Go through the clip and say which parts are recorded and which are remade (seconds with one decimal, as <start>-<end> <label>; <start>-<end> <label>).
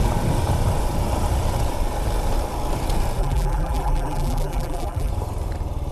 0.0-3.2 recorded; 3.2-5.1 remade; 5.1-5.9 recorded